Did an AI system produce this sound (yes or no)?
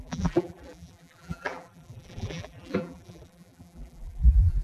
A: yes